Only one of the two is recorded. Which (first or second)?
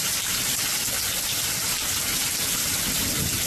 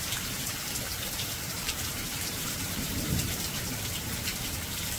first